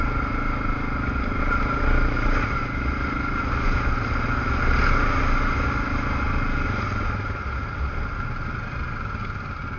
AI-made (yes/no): no